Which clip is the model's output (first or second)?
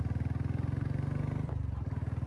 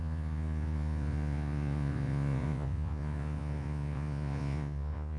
second